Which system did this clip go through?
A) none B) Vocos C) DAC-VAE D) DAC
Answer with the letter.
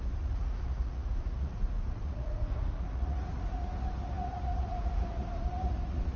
B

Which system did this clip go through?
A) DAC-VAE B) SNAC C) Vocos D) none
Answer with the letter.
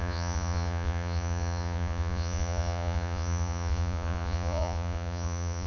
C